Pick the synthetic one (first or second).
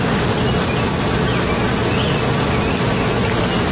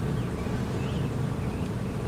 second